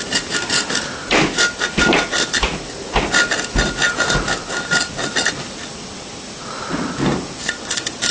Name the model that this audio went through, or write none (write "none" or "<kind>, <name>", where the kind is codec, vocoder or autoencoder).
none